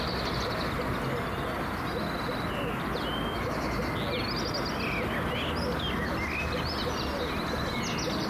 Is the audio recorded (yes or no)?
yes